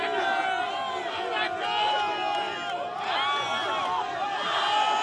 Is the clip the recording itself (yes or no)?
yes